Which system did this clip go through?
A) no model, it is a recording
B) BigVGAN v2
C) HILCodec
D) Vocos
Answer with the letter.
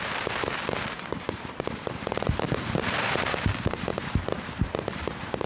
B